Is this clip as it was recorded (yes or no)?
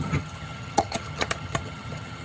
no